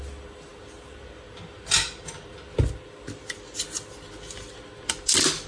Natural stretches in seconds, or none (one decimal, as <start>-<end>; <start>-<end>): 0.0-5.5